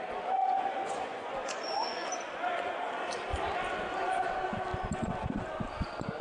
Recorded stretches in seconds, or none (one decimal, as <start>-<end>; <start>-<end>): 0.0-0.4; 2.9-6.2